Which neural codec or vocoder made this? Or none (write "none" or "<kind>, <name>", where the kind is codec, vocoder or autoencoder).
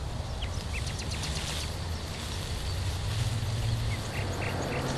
none